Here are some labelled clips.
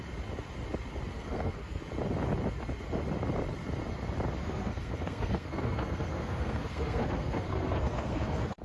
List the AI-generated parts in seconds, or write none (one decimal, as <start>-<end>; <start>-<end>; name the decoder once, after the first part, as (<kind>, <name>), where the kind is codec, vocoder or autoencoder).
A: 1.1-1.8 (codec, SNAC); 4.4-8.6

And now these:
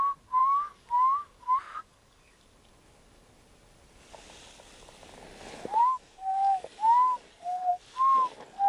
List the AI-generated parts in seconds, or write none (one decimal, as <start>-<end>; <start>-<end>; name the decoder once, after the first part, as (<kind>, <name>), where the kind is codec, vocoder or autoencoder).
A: 0.4-2.4 (codec, DAC); 5.8-7.7

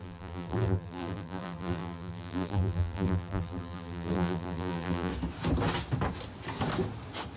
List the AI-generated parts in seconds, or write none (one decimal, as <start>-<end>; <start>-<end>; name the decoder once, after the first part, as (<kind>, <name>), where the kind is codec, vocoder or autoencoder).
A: 0.0-5.1 (vocoder, BigVGAN v2)

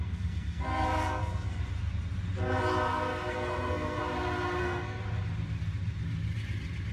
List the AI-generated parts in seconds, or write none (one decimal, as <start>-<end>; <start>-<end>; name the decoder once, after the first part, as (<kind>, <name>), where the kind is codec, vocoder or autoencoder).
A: 0.0-1.6 (codec, SNAC); 3.3-4.0; 4.6-5.0